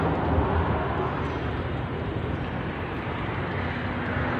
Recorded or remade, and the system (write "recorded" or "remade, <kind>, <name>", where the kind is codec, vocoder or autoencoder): recorded